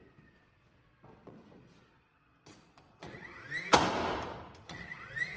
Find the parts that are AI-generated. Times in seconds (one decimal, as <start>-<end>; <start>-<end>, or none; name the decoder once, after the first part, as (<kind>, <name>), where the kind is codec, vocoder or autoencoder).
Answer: 0.0-3.3 (vocoder, Vocos); 4.6-5.4